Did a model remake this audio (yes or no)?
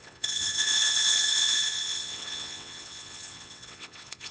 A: yes